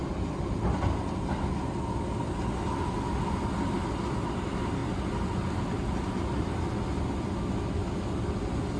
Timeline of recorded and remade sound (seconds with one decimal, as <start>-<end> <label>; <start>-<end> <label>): 0.0-8.8 recorded